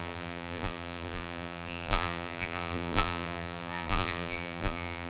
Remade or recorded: remade